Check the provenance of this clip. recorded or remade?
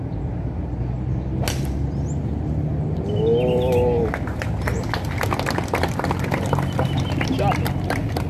recorded